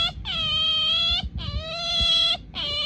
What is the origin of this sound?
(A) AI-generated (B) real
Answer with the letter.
B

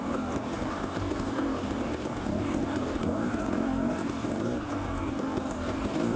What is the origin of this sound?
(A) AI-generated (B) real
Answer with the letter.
A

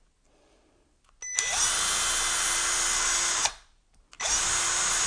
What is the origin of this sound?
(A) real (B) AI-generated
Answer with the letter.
A